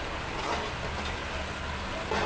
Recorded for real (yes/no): yes